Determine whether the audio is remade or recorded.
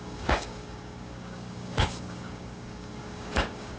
remade